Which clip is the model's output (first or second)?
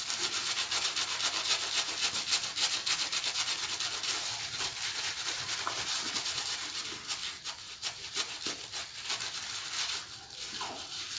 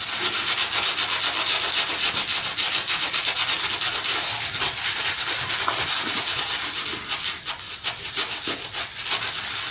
first